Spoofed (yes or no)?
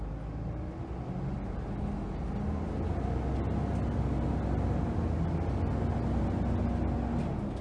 no